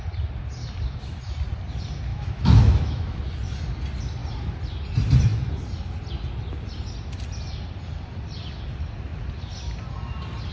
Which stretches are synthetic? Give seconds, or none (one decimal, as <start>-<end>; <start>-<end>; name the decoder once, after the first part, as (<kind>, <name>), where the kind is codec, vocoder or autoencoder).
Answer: 2.1-3.2 (autoencoder, DAC-VAE)